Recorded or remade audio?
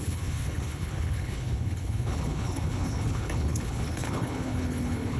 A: remade